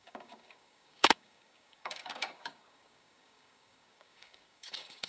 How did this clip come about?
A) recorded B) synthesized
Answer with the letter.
B